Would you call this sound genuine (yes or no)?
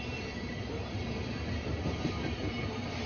yes